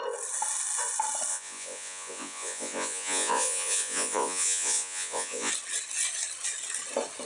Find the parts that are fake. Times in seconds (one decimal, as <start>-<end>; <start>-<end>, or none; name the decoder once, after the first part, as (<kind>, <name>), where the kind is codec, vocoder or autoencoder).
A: 1.3-5.5 (vocoder, Vocos)